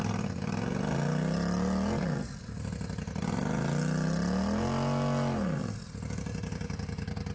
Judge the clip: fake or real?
real